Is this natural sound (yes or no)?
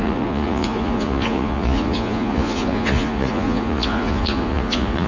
no